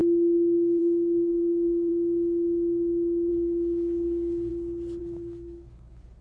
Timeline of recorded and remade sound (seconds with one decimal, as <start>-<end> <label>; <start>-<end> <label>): 0.0-0.8 recorded; 0.8-1.9 remade; 1.9-3.3 recorded; 3.3-4.5 remade; 4.5-5.0 recorded; 5.0-6.2 remade